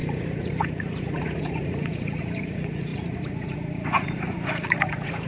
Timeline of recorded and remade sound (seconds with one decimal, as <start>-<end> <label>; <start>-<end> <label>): 0.0-5.3 remade